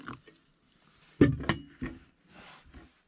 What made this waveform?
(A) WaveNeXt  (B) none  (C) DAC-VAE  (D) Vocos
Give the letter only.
B